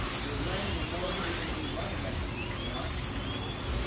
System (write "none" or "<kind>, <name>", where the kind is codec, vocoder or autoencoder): none